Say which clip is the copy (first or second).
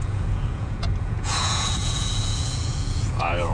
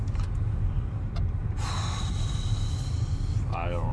first